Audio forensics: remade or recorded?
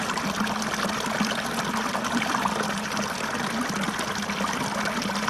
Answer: recorded